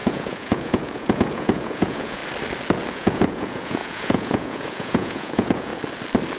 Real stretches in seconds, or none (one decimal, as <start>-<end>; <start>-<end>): 2.2-2.9; 5.7-6.4